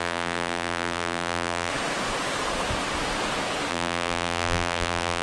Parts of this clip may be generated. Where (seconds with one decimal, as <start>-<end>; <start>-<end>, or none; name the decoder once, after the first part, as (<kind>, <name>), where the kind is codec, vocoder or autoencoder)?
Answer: 0.0-1.7 (vocoder, BigVGAN v2); 3.7-5.2